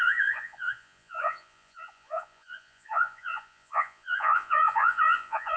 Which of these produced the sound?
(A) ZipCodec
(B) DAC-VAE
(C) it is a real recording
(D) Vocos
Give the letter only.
D